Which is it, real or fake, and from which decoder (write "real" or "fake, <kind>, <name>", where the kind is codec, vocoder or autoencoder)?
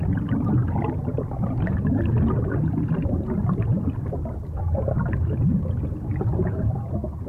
real